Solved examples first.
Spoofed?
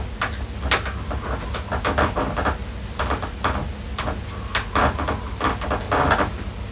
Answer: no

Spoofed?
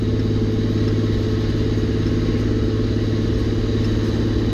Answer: no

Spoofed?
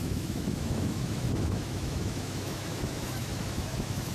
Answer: yes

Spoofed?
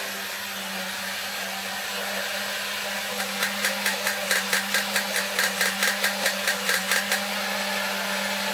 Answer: no